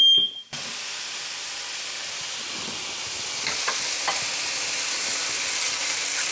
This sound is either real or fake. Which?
real